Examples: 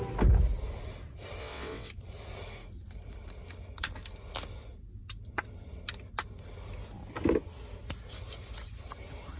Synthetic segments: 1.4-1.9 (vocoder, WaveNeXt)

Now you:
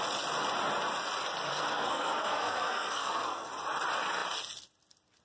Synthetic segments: 1.5-3.5 (codec, SNAC)

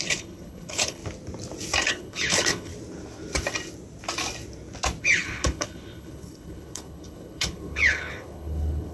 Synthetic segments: 0.0-1.0 (codec, HILCodec); 1.8-2.7; 5.0-8.9

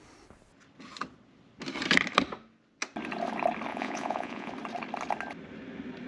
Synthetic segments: 3.7-4.5 (vocoder, Vocos)

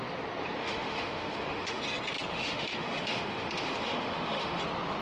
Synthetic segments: 0.6-1.8 (autoencoder, DAC-VAE); 2.3-4.6

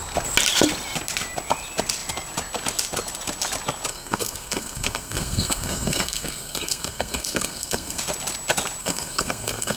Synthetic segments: 3.9-8.0 (codec, SNAC); 8.8-9.8

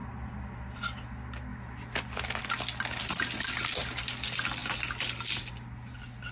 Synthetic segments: none

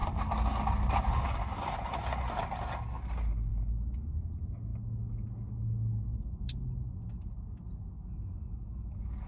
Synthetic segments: none